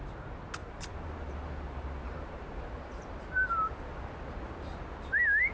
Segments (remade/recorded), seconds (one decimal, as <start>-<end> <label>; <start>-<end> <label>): 0.0-0.6 recorded; 0.6-3.1 remade; 3.1-5.5 recorded